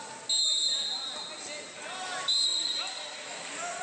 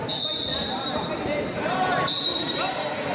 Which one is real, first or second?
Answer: first